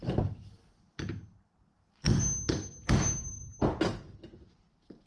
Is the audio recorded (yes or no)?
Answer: yes